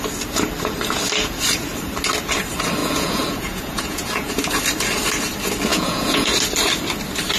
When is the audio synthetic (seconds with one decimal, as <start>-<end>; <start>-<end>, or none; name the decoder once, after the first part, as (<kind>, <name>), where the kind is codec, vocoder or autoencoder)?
2.8-4.3 (vocoder, Vocos); 5.7-6.3